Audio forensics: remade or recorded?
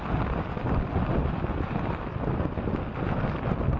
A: recorded